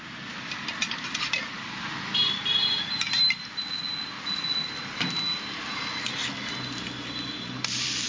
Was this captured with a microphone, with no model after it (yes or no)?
yes